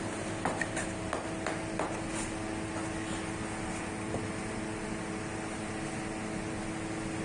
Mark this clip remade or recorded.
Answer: recorded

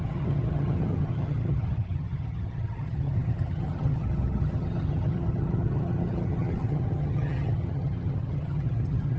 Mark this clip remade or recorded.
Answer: remade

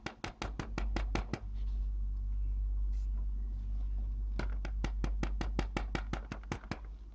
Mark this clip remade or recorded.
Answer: recorded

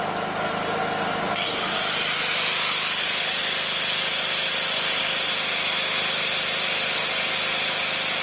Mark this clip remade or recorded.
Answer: recorded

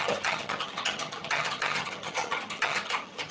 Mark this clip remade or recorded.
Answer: remade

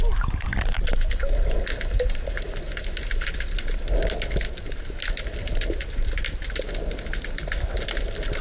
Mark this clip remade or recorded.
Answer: recorded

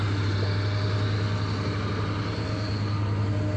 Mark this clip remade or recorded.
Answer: recorded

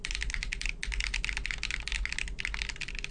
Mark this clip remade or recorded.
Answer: recorded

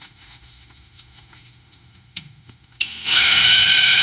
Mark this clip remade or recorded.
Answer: remade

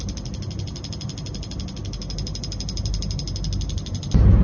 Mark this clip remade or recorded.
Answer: recorded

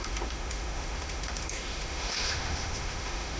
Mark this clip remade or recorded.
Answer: remade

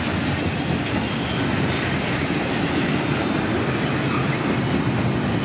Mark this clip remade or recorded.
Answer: recorded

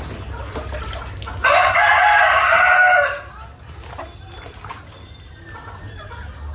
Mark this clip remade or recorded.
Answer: recorded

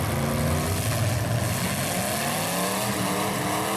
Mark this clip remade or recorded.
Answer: recorded